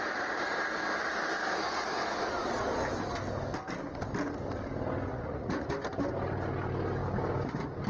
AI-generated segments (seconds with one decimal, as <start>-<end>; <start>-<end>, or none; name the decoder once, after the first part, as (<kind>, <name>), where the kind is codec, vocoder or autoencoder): 5.1-5.7 (vocoder, Vocos)